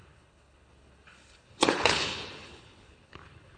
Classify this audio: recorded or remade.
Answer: remade